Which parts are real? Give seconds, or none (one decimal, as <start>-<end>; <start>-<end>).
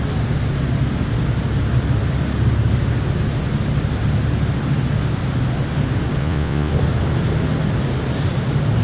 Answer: 0.0-6.2; 6.7-8.8